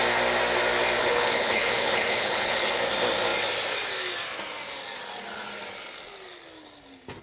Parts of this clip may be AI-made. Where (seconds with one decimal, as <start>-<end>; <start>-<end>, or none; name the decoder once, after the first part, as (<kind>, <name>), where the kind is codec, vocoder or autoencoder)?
1.0-2.7 (codec, HILCodec)

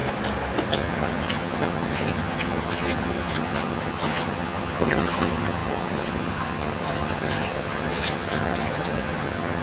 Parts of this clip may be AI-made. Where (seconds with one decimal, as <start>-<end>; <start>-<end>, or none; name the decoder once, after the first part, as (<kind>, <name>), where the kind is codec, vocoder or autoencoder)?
0.7-9.6 (vocoder, HiFi-GAN)

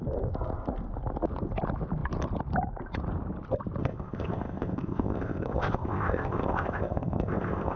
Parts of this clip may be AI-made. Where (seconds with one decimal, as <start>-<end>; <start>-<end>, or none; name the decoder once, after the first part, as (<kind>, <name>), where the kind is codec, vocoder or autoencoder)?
3.8-7.8 (codec, ZipCodec)